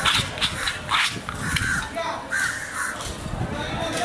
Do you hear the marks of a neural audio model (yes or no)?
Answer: no